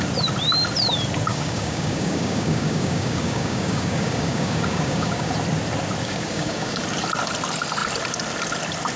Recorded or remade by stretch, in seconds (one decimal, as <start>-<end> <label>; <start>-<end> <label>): 0.0-1.3 recorded; 1.3-5.3 remade; 5.3-6.0 recorded; 6.0-6.8 remade; 6.8-9.0 recorded